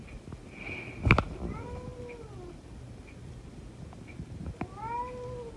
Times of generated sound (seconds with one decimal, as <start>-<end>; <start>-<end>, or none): none

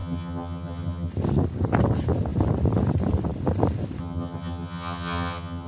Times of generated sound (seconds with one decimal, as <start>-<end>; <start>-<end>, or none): 0.0-1.1; 4.0-5.7